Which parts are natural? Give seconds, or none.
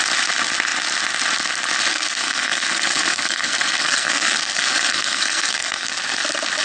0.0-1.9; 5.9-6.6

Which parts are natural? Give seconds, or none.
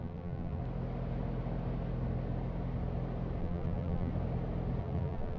0.6-3.4; 4.1-4.8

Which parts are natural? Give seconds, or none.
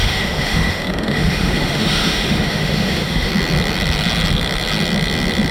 3.3-5.5